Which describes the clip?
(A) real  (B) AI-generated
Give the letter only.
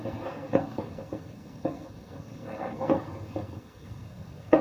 B